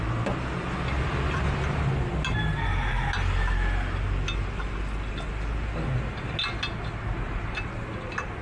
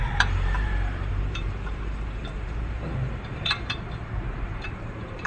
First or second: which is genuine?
first